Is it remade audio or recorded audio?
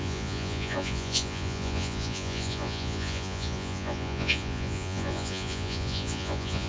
remade